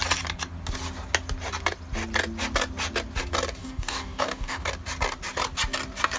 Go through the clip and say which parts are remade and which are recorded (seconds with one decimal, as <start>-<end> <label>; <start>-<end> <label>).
0.0-3.6 recorded; 3.6-4.7 remade; 4.7-6.2 recorded

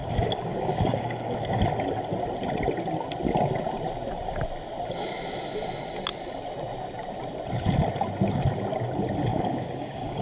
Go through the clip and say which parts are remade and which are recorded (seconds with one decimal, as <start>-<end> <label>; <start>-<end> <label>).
0.0-1.6 remade; 1.6-9.3 recorded; 9.3-10.2 remade

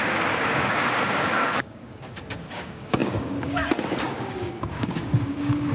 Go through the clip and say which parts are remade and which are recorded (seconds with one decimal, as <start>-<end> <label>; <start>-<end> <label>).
0.0-5.7 remade

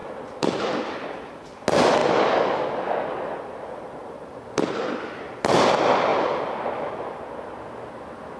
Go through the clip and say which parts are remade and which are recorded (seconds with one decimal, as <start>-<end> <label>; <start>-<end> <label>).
0.0-8.4 recorded

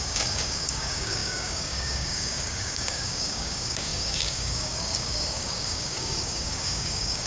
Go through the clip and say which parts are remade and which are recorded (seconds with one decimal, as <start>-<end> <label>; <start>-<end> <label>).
0.0-7.3 remade

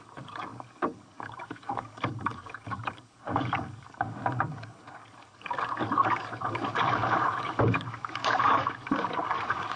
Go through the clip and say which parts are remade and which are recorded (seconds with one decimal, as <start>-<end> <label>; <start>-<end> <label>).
0.0-9.8 remade